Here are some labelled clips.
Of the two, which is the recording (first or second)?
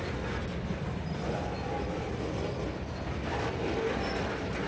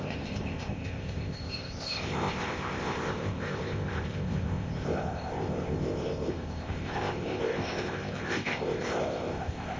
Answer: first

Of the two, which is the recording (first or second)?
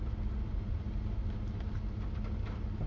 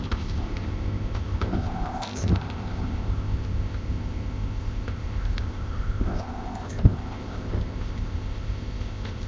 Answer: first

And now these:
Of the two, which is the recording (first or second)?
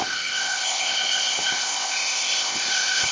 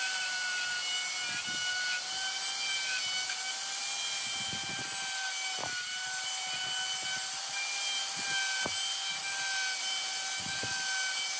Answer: second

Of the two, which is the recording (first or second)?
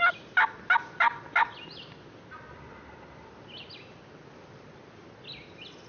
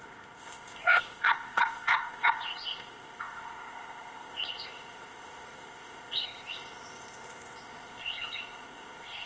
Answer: first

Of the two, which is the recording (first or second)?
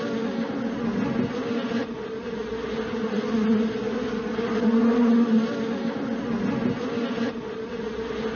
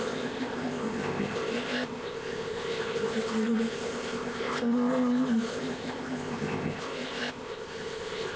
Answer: first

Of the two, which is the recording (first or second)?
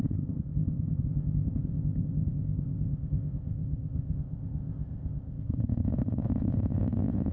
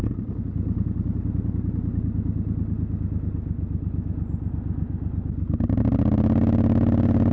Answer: second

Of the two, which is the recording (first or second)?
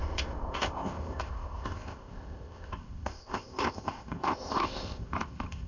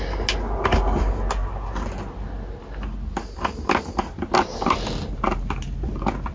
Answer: second